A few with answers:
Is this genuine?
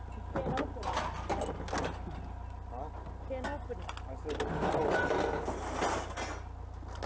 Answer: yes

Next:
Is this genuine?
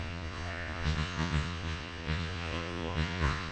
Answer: no